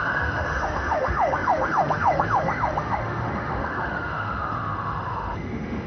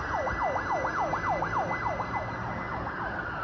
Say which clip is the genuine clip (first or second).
second